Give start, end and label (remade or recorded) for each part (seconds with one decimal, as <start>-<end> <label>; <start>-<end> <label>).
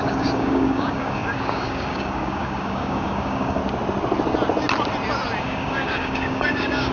0.0-3.6 remade; 3.6-5.4 recorded; 5.4-6.9 remade